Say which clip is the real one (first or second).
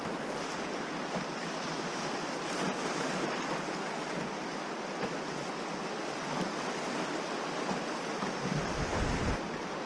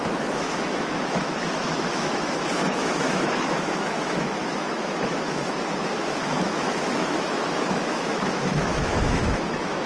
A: first